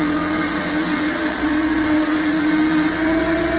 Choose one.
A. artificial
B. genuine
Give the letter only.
A